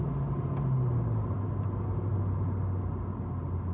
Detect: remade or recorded recorded